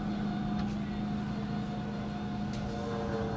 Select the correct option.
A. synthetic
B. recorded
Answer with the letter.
B